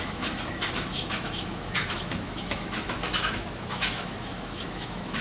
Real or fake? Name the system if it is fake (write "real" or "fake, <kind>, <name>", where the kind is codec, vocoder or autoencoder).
fake, autoencoder, DAC-VAE